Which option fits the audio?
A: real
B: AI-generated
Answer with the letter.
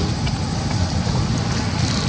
A